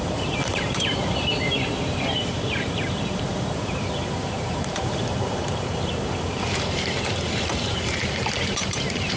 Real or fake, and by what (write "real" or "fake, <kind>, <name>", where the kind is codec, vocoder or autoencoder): fake, vocoder, BigVGAN v2